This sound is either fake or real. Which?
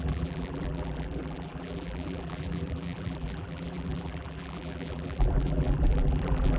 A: fake